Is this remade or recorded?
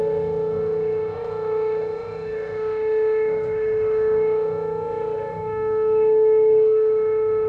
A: remade